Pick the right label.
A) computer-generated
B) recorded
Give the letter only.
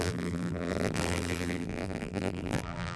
A